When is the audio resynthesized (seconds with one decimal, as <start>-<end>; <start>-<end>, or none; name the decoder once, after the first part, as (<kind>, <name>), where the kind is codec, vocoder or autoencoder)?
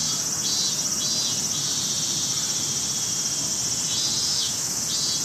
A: 4.3-4.8 (autoencoder, DAC-VAE)